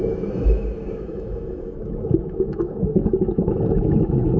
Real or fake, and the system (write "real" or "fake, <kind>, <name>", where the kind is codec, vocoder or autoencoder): fake, autoencoder, DAC-VAE